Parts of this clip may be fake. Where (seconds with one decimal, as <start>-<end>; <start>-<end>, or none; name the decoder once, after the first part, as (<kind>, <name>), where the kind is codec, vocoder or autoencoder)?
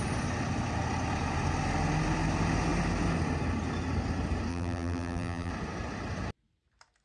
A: 4.5-5.5 (vocoder, BigVGAN v2)